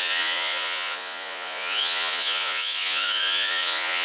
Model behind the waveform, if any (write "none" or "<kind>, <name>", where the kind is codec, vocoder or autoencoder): vocoder, Vocos